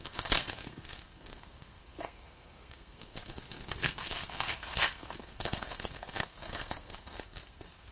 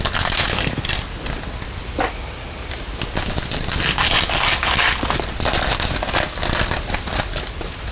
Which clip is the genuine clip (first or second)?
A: second